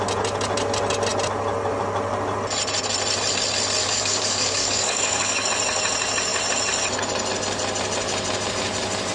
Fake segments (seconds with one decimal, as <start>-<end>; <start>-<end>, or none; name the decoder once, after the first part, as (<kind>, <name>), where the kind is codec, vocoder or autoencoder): 3.8-5.5 (codec, DAC)